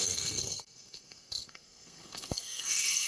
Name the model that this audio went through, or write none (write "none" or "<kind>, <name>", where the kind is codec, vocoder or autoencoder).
codec, SNAC